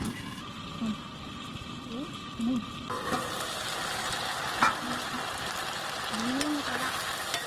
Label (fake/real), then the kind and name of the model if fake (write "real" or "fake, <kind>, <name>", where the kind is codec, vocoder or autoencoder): real